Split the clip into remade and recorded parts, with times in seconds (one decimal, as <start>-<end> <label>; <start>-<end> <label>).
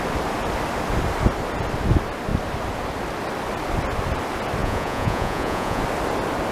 0.0-4.6 recorded; 4.6-5.8 remade; 5.8-6.5 recorded